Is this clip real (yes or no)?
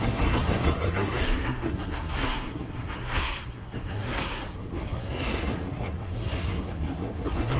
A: no